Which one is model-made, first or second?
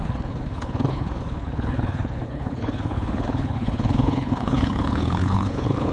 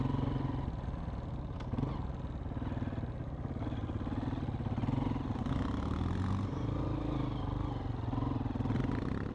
first